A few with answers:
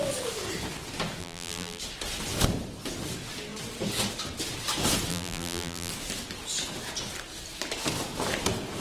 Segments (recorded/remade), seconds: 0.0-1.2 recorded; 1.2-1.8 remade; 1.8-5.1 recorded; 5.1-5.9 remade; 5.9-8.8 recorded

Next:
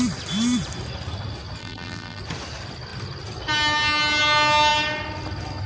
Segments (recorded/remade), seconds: 0.0-1.6 recorded; 1.6-2.2 remade; 2.2-5.7 recorded

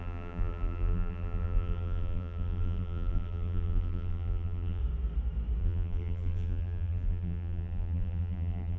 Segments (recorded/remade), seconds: 0.0-4.8 remade; 4.8-5.6 recorded; 5.6-8.8 remade

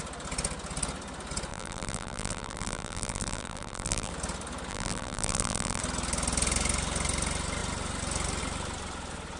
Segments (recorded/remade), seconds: 0.0-1.5 recorded; 1.5-4.1 remade; 4.1-4.7 recorded; 4.7-5.8 remade; 5.8-9.4 recorded

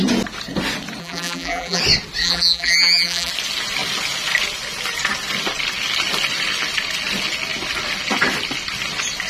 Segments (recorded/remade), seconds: 0.0-1.0 recorded; 1.0-1.8 remade; 1.8-2.2 recorded; 2.2-3.3 remade; 3.3-9.3 recorded